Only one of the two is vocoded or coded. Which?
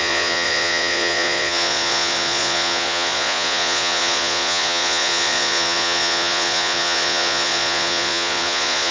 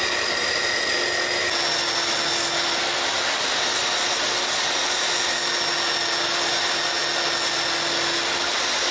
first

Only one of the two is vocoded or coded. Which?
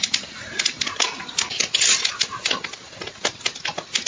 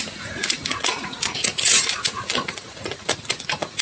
second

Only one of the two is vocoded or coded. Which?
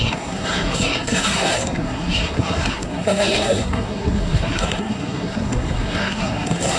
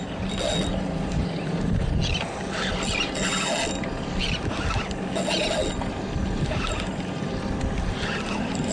first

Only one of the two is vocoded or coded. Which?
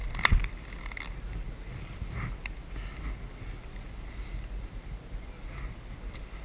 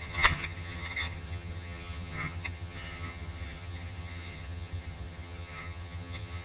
second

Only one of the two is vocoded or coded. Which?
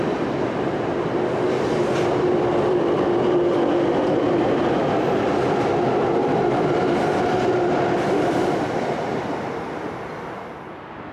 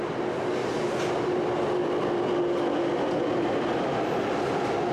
first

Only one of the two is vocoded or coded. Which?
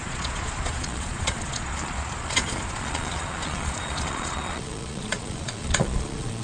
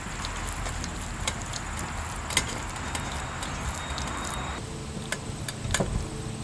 first